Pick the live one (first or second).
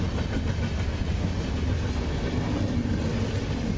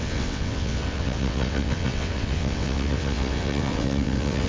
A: first